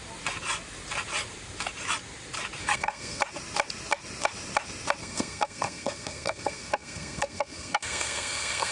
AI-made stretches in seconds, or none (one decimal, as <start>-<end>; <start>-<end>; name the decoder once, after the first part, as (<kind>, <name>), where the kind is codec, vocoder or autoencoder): 2.6-3.2 (codec, SNAC); 5.0-8.7